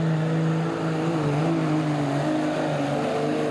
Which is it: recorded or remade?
recorded